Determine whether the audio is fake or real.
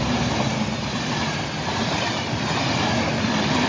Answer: real